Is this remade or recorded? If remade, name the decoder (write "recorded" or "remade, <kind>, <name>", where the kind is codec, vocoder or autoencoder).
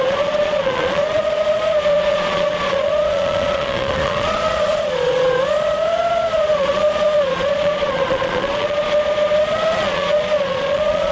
remade, vocoder, Vocos